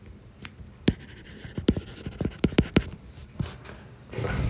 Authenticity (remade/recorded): remade